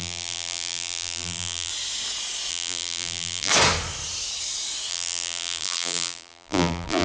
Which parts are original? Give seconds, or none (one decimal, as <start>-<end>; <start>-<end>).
1.7-2.5; 3.5-4.9